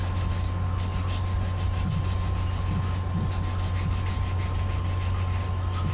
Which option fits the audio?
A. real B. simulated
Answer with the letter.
A